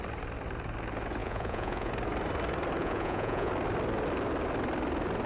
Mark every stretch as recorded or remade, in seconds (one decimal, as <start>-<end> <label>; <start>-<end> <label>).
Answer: 0.0-1.2 recorded; 1.2-1.9 remade; 1.9-2.8 recorded; 2.8-3.5 remade; 3.5-5.3 recorded